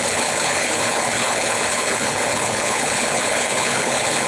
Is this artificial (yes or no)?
yes